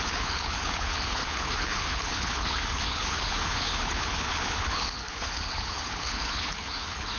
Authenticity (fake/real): fake